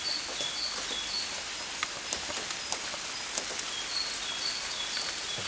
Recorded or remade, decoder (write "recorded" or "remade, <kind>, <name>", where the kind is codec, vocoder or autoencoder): recorded